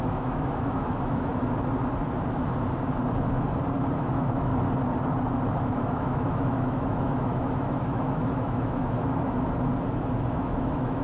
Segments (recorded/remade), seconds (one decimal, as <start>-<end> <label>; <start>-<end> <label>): 0.0-1.3 remade; 1.3-4.0 recorded; 4.0-4.5 remade; 4.5-5.6 recorded; 5.6-9.1 remade; 9.1-10.2 recorded; 10.2-11.0 remade

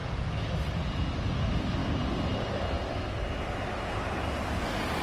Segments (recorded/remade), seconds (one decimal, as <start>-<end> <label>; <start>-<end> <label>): 0.0-5.0 recorded

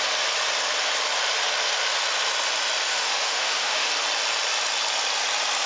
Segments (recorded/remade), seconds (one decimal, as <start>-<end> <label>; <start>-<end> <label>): 0.0-2.9 recorded; 2.9-3.9 remade; 3.9-5.7 recorded